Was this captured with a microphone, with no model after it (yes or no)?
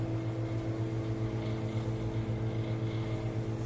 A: yes